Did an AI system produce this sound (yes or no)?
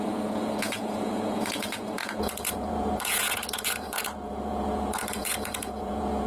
yes